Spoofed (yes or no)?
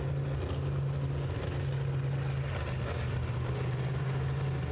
no